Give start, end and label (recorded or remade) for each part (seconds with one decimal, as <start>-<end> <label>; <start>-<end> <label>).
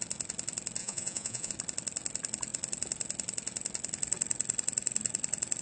0.0-0.8 recorded; 0.8-1.5 remade; 1.5-5.6 recorded